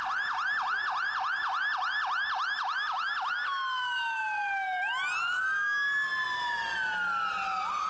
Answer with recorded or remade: recorded